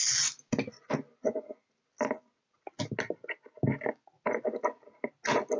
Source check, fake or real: real